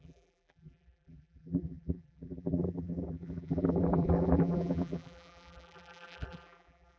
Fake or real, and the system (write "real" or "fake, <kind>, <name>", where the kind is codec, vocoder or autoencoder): fake, vocoder, BigVGAN v2